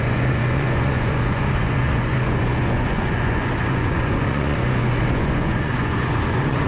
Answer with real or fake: fake